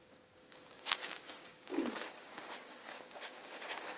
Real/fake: fake